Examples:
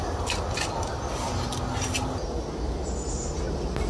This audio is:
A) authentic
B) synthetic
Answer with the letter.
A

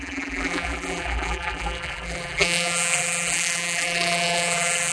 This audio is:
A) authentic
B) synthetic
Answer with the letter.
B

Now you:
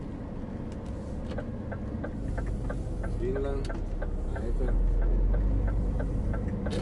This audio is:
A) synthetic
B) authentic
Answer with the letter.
B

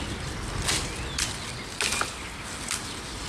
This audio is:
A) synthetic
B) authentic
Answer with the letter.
B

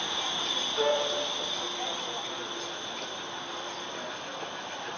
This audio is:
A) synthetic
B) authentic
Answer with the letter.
B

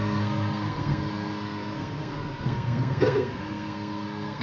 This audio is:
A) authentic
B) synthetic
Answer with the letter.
B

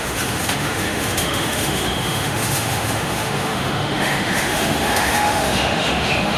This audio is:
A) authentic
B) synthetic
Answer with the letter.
B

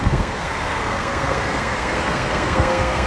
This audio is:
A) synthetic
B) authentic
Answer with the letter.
A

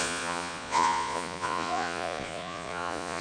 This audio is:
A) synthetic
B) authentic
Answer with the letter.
A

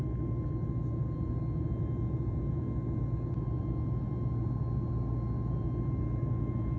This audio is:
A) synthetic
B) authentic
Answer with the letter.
B